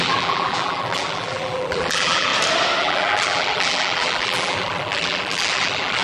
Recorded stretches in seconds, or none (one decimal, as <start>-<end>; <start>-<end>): 2.3-2.8